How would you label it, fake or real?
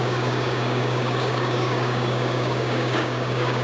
fake